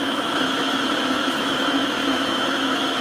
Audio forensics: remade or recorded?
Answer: remade